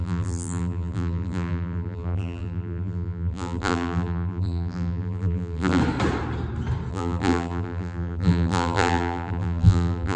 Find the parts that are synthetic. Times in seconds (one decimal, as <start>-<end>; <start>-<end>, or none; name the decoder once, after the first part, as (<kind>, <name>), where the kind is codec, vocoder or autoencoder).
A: 0.0-5.8 (vocoder, BigVGAN v2); 6.9-10.2